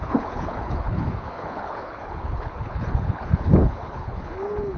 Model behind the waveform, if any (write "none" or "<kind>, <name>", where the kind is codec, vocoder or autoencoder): codec, HILCodec